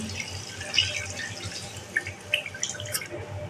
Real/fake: real